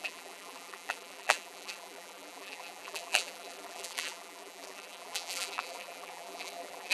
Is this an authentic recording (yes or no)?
no